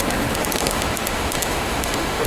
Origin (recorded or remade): remade